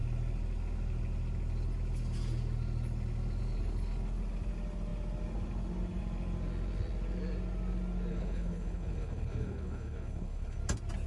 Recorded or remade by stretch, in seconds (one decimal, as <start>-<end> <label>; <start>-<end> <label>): 0.0-8.1 recorded; 8.1-10.6 remade; 10.6-11.1 recorded